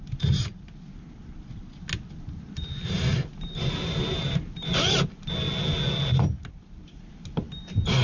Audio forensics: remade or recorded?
recorded